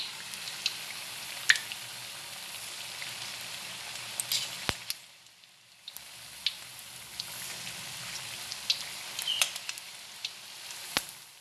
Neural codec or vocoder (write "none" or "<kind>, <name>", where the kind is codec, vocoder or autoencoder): none